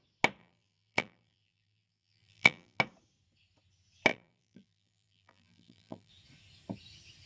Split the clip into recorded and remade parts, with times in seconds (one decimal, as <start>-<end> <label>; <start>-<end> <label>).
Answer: 0.0-0.4 recorded; 0.4-2.8 remade; 2.8-4.1 recorded; 4.1-6.1 remade; 6.1-7.3 recorded